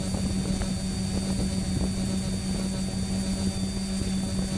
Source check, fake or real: real